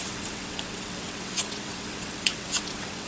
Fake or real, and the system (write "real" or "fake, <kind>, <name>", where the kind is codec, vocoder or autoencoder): fake, vocoder, WaveNeXt